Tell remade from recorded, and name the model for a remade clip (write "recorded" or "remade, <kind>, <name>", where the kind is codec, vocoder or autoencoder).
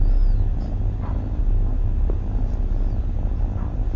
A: recorded